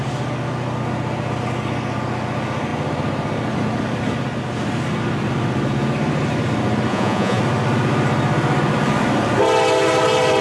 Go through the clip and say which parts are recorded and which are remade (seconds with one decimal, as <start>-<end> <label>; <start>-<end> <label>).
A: 0.0-6.9 recorded; 6.9-7.4 remade; 7.4-10.4 recorded